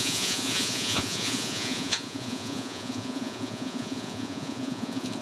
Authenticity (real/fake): fake